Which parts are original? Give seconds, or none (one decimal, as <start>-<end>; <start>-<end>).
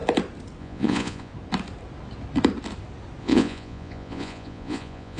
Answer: 0.0-0.6; 1.3-3.2